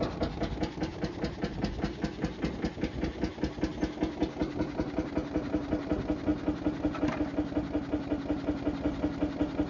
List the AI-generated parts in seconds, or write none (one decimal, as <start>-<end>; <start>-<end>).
none